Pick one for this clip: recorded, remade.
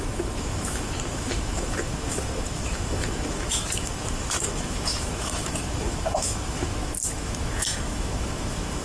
remade